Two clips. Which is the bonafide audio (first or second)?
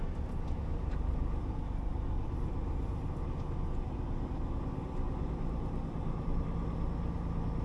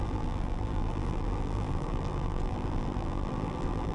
first